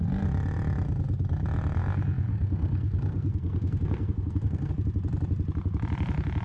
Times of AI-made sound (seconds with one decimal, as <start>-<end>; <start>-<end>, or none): 2.3-4.7